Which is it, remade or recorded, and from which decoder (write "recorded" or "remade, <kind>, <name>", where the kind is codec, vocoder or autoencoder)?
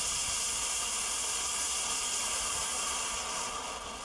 recorded